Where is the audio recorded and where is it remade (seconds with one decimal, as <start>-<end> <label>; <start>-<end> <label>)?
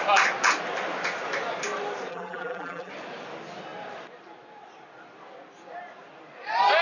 0.0-2.1 recorded; 2.1-2.9 remade; 2.9-6.8 recorded